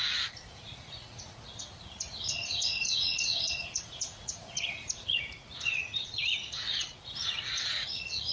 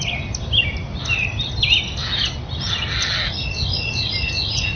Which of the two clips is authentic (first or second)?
second